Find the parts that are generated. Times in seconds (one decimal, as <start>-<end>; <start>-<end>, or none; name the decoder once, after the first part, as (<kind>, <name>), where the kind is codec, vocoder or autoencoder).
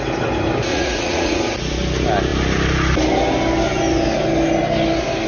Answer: 0.7-1.4 (vocoder, Vocos)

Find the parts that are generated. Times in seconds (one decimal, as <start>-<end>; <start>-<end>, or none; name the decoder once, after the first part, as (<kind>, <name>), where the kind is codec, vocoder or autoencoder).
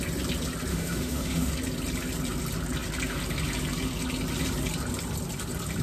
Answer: 0.7-1.5 (autoencoder, DAC-VAE)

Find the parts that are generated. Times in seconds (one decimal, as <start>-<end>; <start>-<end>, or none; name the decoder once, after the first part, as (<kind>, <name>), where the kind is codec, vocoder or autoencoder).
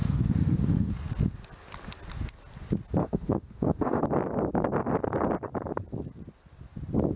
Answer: 0.0-0.9 (autoencoder, DAC-VAE); 3.0-4.0